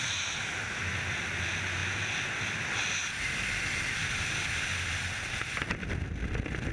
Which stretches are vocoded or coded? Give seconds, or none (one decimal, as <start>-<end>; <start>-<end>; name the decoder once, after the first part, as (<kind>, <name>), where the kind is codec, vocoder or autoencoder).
none